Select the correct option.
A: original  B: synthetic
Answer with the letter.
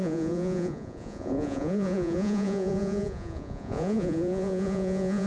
B